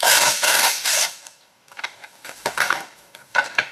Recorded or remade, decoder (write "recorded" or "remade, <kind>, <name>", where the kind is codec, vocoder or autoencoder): remade, codec, DAC